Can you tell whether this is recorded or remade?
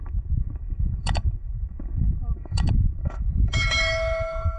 remade